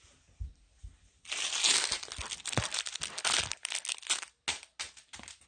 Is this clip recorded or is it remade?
recorded